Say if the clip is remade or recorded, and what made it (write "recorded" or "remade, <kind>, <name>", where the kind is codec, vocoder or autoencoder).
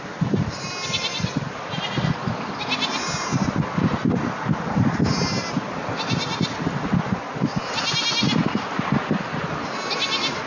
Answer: recorded